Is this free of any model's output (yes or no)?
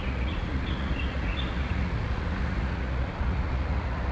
no